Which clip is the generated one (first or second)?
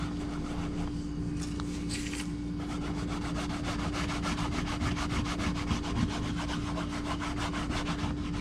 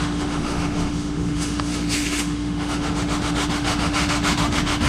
second